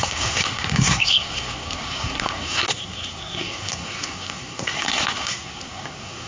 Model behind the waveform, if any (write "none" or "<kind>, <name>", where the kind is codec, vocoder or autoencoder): codec, SNAC